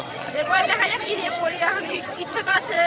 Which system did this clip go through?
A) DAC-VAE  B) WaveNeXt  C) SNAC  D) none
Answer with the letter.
B